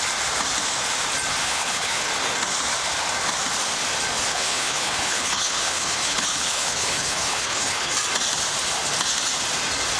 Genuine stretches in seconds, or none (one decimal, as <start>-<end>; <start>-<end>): 0.0-1.4; 2.1-4.3; 7.9-10.0